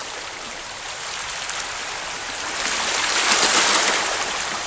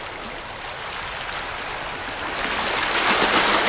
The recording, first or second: second